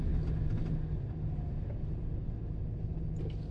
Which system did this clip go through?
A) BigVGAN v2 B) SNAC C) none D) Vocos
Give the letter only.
C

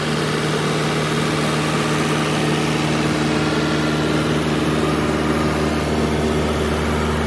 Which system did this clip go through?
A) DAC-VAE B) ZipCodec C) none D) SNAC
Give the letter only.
C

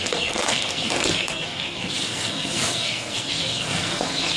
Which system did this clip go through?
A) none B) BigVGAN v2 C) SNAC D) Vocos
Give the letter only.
C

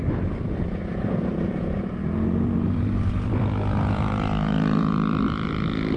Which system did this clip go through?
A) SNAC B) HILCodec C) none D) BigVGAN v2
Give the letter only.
D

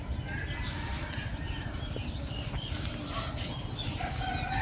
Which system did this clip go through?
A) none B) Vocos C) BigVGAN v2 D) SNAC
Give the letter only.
A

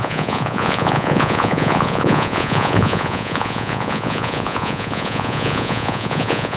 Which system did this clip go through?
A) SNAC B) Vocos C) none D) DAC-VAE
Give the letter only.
B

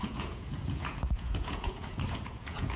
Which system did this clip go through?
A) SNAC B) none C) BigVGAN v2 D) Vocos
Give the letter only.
D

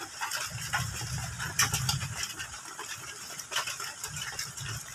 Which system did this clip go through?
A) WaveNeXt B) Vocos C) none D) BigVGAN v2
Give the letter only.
C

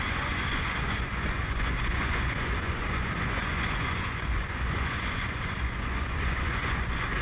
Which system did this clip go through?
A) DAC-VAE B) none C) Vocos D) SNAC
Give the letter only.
C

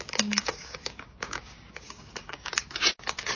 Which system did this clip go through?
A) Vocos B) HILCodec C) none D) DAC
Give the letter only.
D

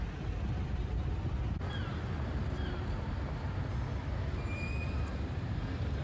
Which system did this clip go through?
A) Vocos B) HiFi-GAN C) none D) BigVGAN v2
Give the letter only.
C